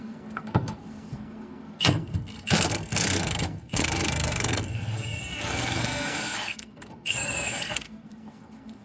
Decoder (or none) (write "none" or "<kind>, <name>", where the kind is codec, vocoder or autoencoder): codec, SNAC